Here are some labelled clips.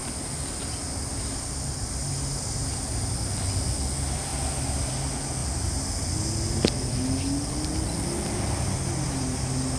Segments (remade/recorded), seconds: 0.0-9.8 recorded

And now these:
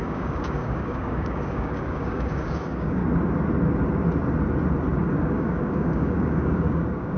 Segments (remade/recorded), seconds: 0.0-3.0 remade; 3.0-5.1 recorded; 5.1-7.2 remade